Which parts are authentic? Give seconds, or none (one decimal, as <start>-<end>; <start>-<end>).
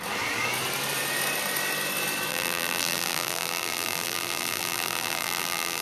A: 0.0-2.3